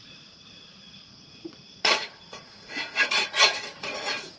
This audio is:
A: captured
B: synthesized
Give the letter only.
B